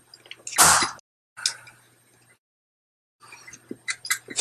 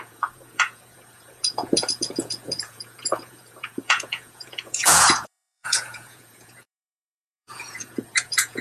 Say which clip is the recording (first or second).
first